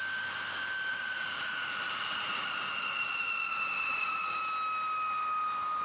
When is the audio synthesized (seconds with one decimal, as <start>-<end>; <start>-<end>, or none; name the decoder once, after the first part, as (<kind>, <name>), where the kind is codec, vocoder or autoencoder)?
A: 0.9-4.4 (vocoder, Vocos)